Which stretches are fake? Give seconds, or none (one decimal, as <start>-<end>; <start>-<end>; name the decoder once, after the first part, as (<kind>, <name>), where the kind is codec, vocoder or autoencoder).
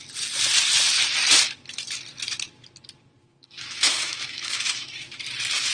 3.2-5.2 (autoencoder, DAC-VAE)